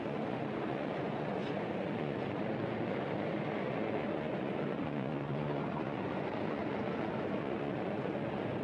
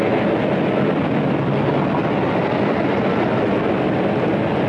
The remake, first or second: first